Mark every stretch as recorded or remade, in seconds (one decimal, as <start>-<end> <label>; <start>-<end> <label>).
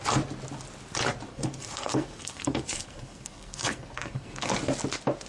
0.0-1.3 recorded; 1.3-4.5 remade; 4.5-5.3 recorded